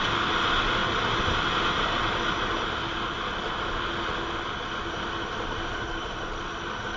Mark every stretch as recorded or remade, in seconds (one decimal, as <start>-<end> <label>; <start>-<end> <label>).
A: 0.0-7.0 recorded